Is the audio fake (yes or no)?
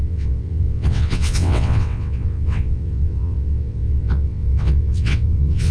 yes